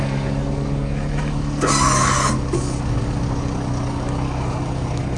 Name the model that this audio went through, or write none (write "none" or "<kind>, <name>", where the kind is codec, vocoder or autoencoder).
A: codec, DAC